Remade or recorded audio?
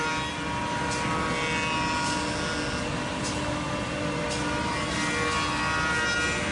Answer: recorded